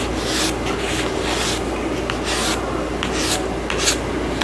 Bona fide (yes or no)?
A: yes